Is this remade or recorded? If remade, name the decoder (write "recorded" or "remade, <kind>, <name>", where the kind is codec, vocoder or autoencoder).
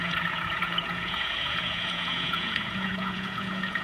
remade, vocoder, Vocos